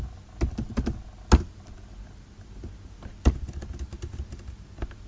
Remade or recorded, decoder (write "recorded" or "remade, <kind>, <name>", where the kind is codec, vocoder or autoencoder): recorded